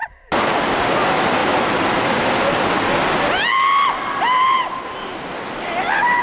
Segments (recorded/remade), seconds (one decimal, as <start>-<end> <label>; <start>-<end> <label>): 0.0-0.8 remade; 0.8-6.2 recorded

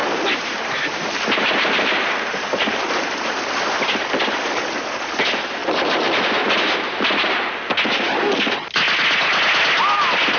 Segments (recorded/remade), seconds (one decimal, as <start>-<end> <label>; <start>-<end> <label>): 0.0-3.4 remade; 3.4-5.6 recorded; 5.6-7.6 remade; 7.6-10.4 recorded

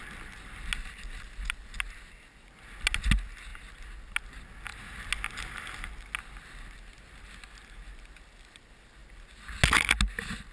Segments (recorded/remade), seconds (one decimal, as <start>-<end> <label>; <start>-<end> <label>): 0.0-10.5 recorded

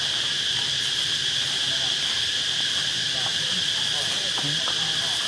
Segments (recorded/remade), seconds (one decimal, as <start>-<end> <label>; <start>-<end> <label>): 0.0-5.3 recorded

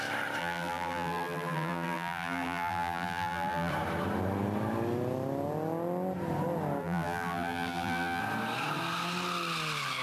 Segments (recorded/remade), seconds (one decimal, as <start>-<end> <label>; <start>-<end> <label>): 0.0-0.4 recorded; 0.4-3.7 remade; 3.7-6.8 recorded; 6.8-8.2 remade; 8.2-10.0 recorded

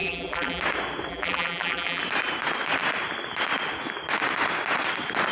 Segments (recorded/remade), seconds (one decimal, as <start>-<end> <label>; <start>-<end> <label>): 0.0-0.6 remade; 0.6-1.1 recorded; 1.1-2.0 remade; 2.0-5.3 recorded

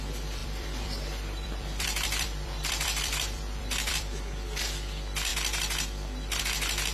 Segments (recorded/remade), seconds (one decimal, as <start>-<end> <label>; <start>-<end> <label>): 0.0-0.4 recorded; 0.4-4.2 remade; 4.2-6.9 recorded